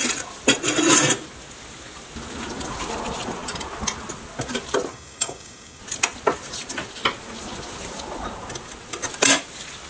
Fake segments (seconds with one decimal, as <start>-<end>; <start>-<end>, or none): 4.9-5.8